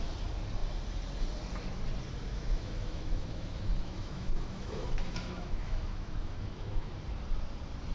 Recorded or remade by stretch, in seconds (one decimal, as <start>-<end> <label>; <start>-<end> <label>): 0.0-2.3 recorded; 2.3-6.9 remade; 6.9-7.9 recorded